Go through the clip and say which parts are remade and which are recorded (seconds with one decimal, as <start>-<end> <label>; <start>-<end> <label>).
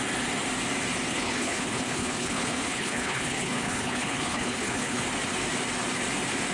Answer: 0.0-1.1 recorded; 1.1-5.0 remade; 5.0-6.5 recorded